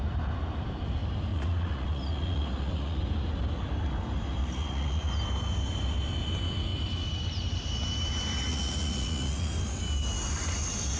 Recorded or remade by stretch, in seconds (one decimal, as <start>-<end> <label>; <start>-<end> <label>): 0.0-1.3 recorded; 1.3-3.0 remade; 3.0-4.4 recorded; 4.4-5.1 remade; 5.1-8.5 recorded; 8.5-9.5 remade; 9.5-11.0 recorded